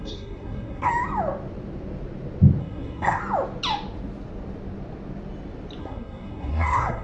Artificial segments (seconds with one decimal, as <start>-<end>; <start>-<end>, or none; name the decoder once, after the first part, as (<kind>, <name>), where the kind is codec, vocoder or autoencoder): 0.0-0.9 (codec, SNAC); 2.6-3.2; 5.8-7.0